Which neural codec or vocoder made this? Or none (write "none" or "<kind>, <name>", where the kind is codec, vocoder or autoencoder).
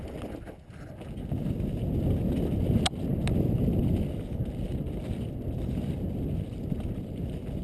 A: none